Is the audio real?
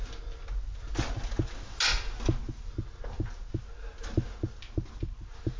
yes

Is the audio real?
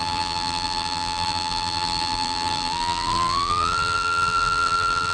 no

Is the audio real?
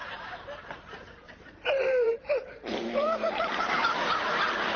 no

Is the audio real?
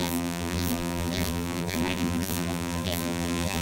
no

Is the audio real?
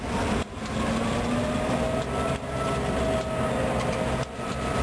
yes